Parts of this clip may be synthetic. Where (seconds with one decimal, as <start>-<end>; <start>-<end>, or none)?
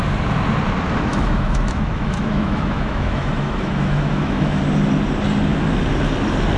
1.1-4.6